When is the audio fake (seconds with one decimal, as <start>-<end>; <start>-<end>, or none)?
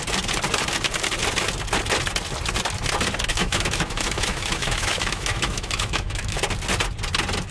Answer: 3.3-6.4